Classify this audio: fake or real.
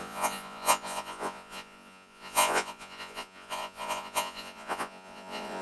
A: fake